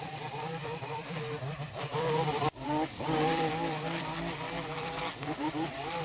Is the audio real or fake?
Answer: fake